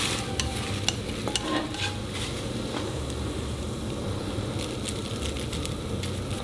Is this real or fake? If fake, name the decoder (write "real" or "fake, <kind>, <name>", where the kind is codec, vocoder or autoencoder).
real